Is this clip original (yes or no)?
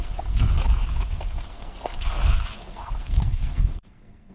no